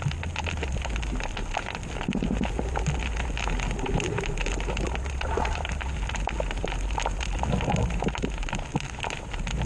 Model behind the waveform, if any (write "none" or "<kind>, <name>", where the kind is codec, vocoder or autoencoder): none